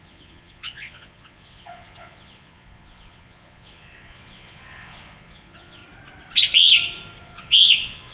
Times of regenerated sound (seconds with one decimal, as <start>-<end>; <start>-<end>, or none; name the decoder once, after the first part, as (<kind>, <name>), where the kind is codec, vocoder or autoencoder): 0.0-5.8 (vocoder, Vocos); 7.2-8.1